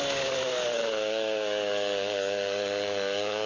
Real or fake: fake